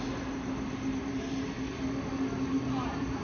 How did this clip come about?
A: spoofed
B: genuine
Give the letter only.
B